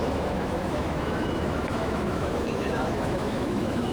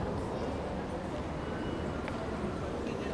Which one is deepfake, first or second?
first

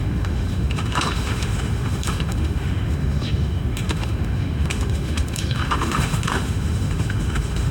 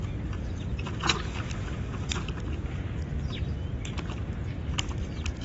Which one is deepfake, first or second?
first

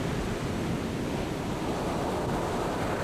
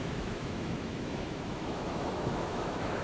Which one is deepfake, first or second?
second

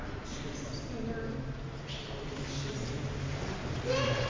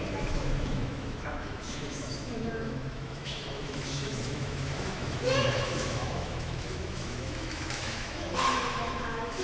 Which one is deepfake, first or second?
second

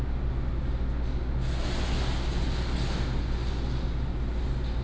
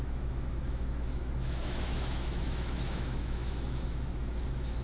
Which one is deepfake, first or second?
second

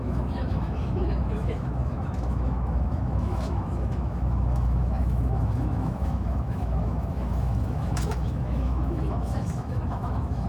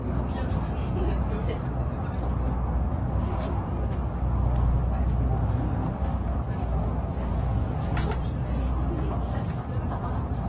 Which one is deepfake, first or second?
first